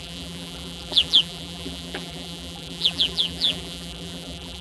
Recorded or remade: remade